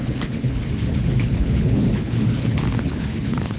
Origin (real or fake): fake